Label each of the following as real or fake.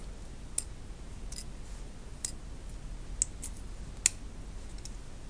real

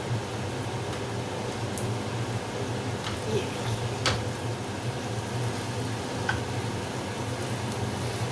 real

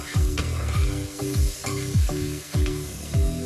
fake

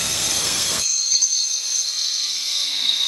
fake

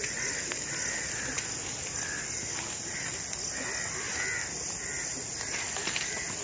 real